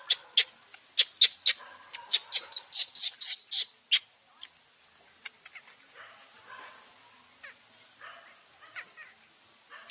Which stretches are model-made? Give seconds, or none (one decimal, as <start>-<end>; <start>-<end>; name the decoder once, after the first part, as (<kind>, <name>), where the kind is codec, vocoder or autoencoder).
none